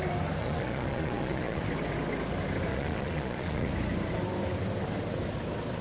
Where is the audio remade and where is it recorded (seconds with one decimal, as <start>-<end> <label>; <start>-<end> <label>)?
0.0-0.4 recorded; 0.4-1.6 remade; 1.6-2.7 recorded; 2.7-3.7 remade; 3.7-5.8 recorded